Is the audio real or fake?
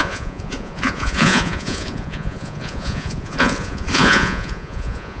fake